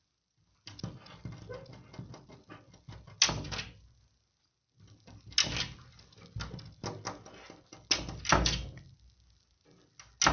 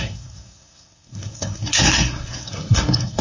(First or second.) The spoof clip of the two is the second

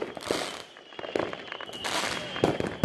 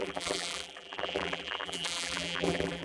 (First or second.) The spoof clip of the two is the second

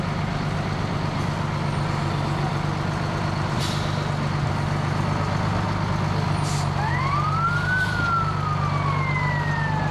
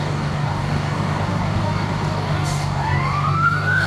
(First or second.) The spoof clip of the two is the second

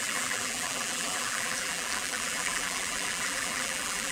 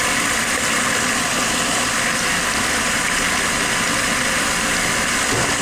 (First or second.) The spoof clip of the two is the first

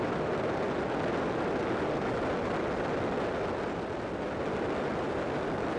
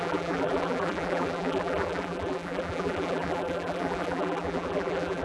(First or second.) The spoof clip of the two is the second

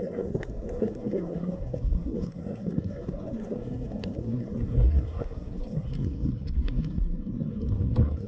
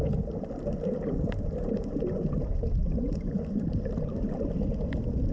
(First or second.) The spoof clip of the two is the first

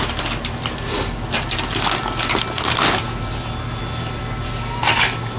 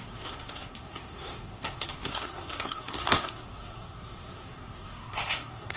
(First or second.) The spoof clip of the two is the second